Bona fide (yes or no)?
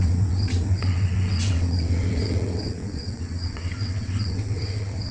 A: no